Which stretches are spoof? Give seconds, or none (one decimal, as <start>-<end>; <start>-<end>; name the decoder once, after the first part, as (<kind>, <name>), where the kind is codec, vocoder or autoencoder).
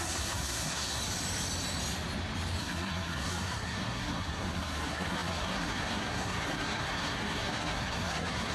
0.0-1.0 (codec, SNAC); 2.6-8.5